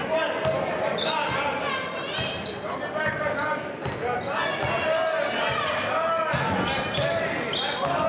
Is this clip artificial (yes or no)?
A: no